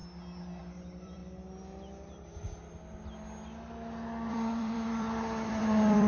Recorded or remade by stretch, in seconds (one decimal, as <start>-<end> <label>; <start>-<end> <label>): 0.0-0.6 recorded; 0.6-1.2 remade; 1.2-4.3 recorded; 4.3-6.1 remade